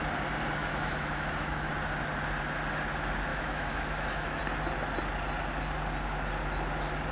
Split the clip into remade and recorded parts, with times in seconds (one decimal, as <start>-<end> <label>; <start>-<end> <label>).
0.0-0.6 recorded; 0.6-1.7 remade; 1.7-3.3 recorded; 3.3-4.4 remade; 4.4-7.1 recorded